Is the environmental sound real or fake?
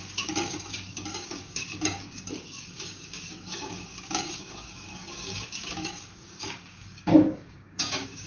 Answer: fake